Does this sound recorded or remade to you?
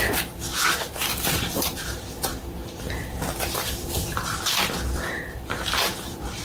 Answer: remade